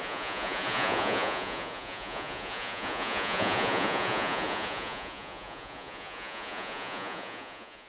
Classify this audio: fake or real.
fake